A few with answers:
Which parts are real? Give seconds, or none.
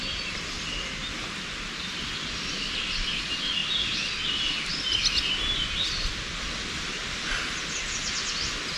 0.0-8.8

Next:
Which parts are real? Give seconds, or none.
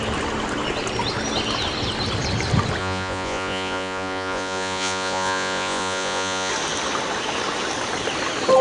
0.0-2.8; 6.5-8.6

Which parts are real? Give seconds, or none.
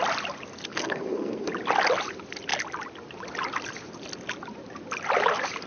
0.0-0.7; 1.5-5.7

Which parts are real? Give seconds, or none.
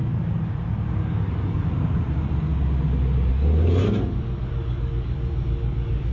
0.0-1.0; 1.7-4.4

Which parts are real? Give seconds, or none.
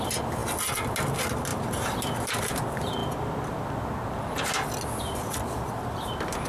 0.0-6.5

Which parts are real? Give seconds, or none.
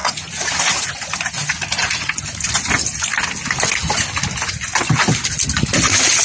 0.9-1.4; 2.2-6.2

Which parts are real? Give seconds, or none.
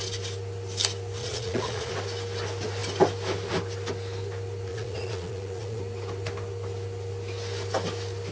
0.0-1.2; 1.9-4.7; 5.8-8.3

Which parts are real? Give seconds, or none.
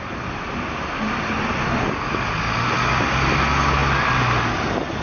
0.0-5.0